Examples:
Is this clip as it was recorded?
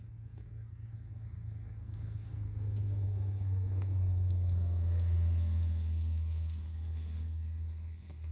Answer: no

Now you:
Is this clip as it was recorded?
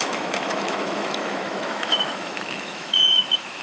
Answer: no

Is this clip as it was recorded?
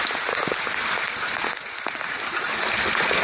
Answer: yes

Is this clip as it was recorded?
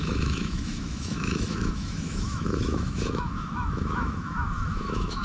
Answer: no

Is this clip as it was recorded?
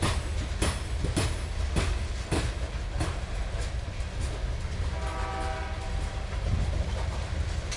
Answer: yes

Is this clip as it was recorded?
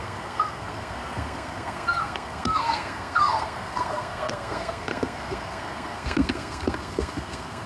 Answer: no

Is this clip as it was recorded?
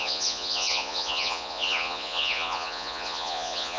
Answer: no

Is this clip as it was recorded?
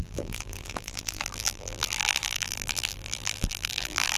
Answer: no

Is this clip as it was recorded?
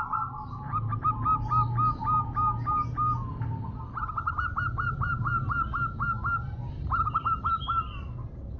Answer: yes